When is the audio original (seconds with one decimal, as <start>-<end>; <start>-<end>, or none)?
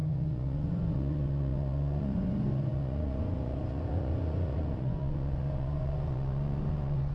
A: none